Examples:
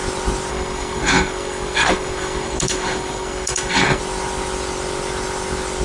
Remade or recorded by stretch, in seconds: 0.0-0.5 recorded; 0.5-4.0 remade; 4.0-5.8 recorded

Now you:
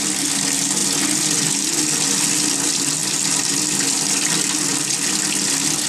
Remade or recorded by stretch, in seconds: 0.0-5.9 recorded

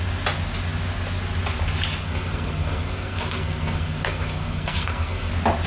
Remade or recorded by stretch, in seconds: 0.0-2.0 recorded; 2.0-5.3 remade; 5.3-5.7 recorded

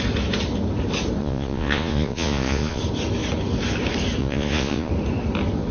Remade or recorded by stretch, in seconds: 0.0-1.2 recorded; 1.2-2.8 remade; 2.8-4.2 recorded; 4.2-4.9 remade; 4.9-5.7 recorded

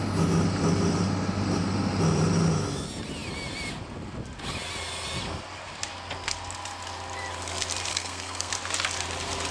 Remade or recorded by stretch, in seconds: 0.0-7.9 recorded; 7.9-8.5 remade; 8.5-9.5 recorded

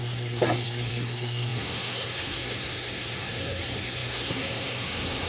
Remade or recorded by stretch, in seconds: 0.0-5.3 remade

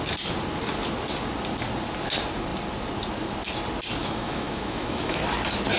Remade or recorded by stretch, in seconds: 0.0-4.0 recorded; 4.0-5.2 remade; 5.2-5.8 recorded